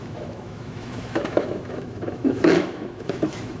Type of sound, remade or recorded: remade